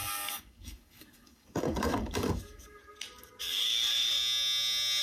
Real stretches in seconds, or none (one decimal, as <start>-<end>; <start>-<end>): 2.8-3.4; 4.2-5.0